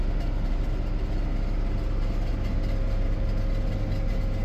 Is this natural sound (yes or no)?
yes